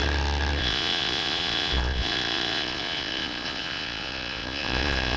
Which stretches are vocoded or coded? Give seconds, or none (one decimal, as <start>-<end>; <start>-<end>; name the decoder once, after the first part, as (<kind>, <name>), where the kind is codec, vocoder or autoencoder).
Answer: 0.6-5.2 (vocoder, Vocos)